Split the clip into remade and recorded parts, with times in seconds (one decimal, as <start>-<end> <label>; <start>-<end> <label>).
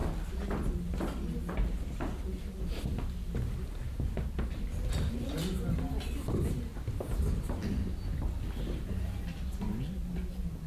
0.0-10.7 recorded